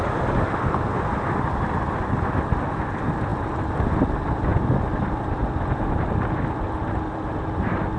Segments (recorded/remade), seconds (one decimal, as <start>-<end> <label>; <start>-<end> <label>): 0.0-8.0 recorded